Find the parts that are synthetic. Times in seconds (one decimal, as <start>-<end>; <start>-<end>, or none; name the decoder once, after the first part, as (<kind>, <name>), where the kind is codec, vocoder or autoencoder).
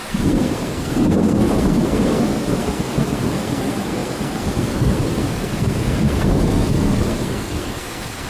0.0-8.3 (codec, SNAC)